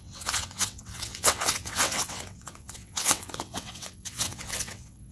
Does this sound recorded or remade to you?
remade